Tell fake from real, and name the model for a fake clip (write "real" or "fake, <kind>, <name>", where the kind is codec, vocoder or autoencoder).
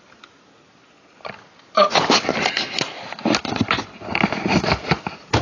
real